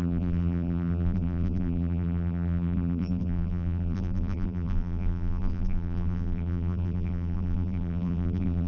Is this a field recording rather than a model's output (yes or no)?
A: no